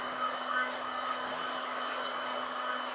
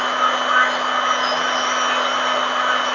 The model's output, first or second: first